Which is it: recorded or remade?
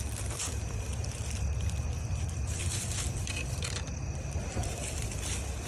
recorded